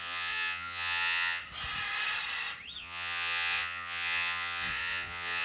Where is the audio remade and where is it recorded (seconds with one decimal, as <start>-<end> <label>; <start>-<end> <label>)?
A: 0.0-1.4 remade; 1.4-2.8 recorded; 2.8-5.4 remade